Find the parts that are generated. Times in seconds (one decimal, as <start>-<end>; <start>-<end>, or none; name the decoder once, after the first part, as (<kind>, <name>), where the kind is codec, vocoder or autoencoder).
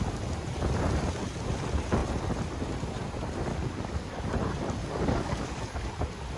3.5-4.3 (codec, DAC); 4.8-5.9